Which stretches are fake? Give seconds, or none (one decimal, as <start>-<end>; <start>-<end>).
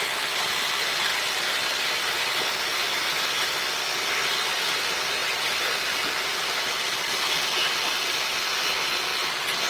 none